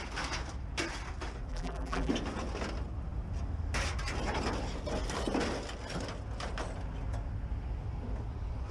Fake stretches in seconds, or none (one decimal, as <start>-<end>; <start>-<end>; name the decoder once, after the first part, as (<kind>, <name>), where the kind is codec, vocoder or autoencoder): 1.5-2.1 (vocoder, BigVGAN v2)